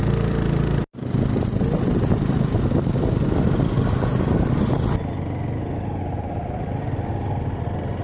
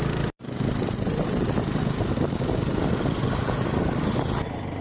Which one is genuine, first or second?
first